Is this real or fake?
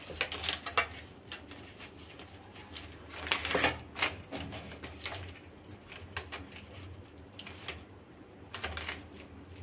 real